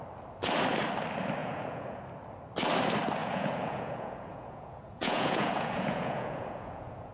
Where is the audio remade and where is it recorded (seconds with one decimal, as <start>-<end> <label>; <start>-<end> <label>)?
0.0-1.4 recorded; 1.4-2.0 remade; 2.0-3.2 recorded; 3.2-7.1 remade

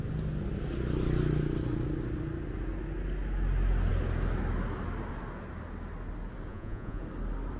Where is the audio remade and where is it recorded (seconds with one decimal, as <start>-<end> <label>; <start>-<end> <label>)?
0.0-6.5 recorded; 6.5-7.0 remade; 7.0-7.6 recorded

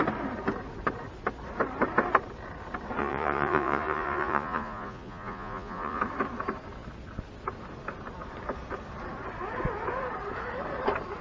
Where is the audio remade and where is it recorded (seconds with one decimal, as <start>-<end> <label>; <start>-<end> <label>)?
0.0-3.0 recorded; 3.0-6.0 remade; 6.0-11.2 recorded

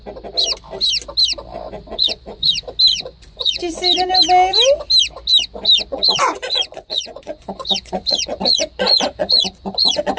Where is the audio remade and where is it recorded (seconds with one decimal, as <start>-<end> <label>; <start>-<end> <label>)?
0.0-1.9 recorded; 1.9-2.5 remade; 2.5-2.9 recorded; 2.9-4.1 remade; 4.1-5.9 recorded; 5.9-10.2 remade

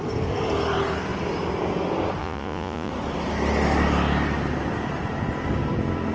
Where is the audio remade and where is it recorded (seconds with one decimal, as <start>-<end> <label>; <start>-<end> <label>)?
0.0-2.2 recorded; 2.2-2.9 remade; 2.9-6.1 recorded